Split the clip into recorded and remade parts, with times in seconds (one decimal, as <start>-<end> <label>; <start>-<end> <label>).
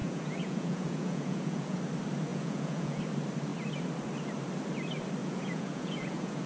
0.0-1.8 remade; 1.8-2.3 recorded; 2.3-3.0 remade; 3.0-5.2 recorded; 5.2-6.5 remade